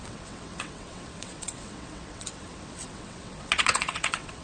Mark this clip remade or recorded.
remade